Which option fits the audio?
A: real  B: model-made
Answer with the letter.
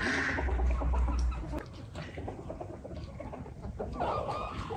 A